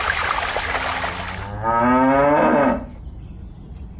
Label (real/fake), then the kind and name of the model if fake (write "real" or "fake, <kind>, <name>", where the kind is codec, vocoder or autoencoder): real